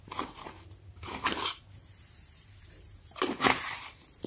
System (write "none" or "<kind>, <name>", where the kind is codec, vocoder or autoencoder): vocoder, BigVGAN v2